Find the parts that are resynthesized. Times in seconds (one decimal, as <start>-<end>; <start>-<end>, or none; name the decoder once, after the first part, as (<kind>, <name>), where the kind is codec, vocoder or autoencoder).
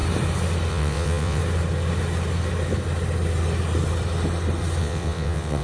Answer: 0.7-1.4 (vocoder, WaveNeXt); 4.8-5.6